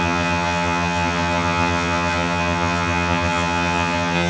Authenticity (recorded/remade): remade